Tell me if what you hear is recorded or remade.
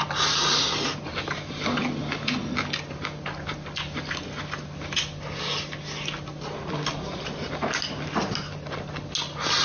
recorded